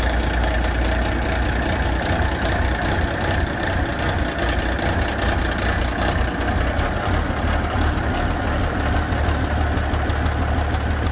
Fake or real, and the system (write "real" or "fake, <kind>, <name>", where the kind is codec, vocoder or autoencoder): real